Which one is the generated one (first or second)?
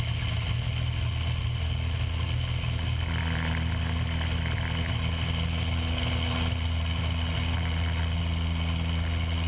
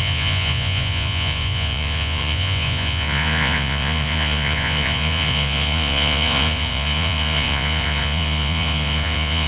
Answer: second